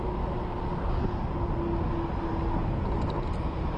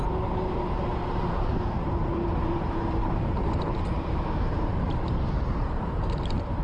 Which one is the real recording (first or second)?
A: first